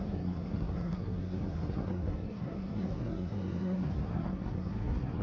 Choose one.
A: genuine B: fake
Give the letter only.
B